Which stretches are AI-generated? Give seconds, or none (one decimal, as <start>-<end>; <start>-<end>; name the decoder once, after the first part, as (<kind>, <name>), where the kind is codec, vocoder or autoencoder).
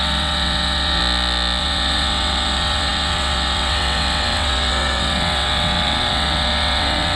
0.0-1.0 (vocoder, WaveNeXt); 1.6-7.2